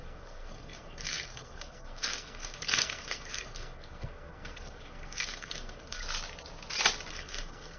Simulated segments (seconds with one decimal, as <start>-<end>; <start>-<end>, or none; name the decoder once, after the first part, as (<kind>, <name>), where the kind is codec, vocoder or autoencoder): 0.0-6.0 (codec, SNAC); 7.1-7.8